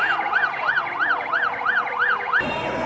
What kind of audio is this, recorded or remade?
recorded